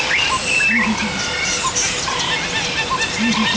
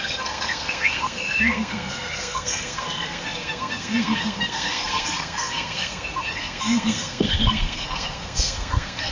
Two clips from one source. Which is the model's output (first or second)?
second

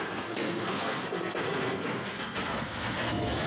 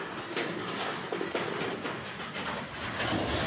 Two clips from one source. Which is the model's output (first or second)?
first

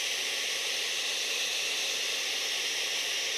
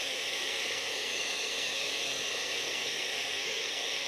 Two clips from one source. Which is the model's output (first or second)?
second